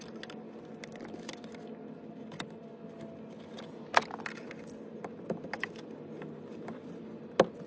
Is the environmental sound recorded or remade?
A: recorded